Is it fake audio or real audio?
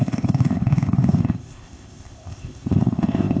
fake